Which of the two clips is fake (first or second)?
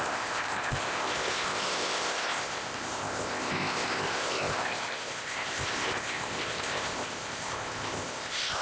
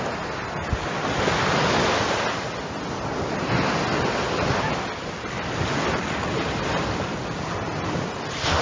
first